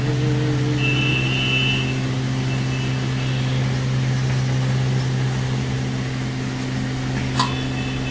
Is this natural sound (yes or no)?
yes